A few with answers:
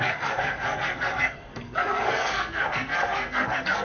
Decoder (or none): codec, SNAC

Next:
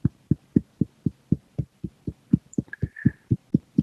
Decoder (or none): none